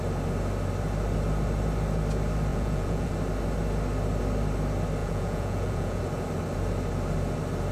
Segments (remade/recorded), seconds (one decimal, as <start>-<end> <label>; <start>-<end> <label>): 0.0-2.5 recorded; 2.5-3.1 remade; 3.1-5.0 recorded; 5.0-6.0 remade; 6.0-7.7 recorded